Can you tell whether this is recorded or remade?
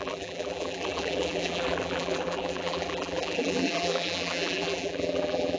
remade